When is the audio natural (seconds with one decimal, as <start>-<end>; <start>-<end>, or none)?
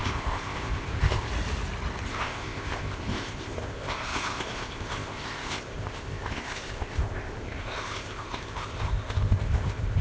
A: 1.3-2.1